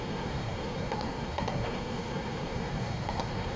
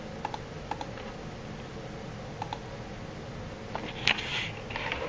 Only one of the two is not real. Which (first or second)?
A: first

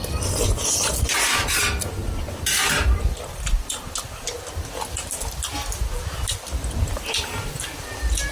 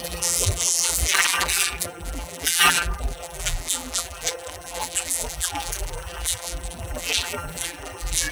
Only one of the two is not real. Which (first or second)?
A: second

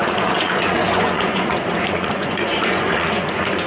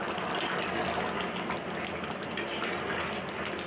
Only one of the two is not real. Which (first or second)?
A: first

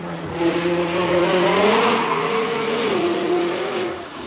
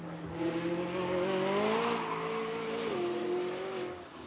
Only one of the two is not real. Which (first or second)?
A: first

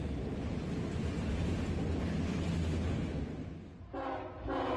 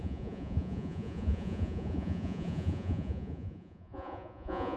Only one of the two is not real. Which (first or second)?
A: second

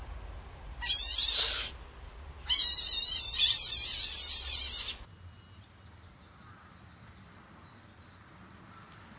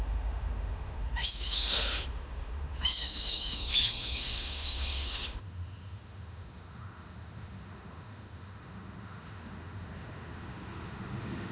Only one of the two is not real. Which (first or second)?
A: second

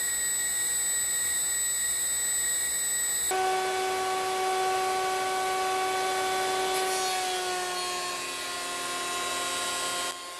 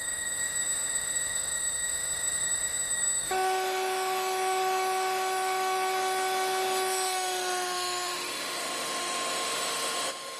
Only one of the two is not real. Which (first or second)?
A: second